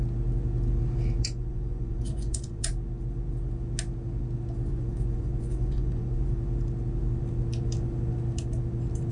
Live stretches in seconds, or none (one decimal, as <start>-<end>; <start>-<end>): 0.0-1.2; 2.7-4.7; 6.3-9.1